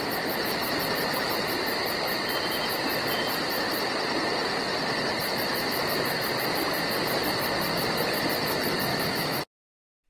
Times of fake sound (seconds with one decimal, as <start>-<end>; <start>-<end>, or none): 8.9-9.4